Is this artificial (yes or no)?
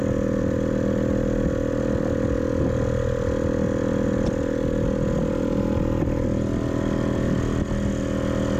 no